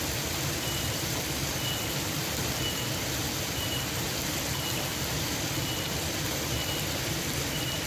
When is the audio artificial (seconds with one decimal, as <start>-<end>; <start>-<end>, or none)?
0.0-4.9; 5.5-7.9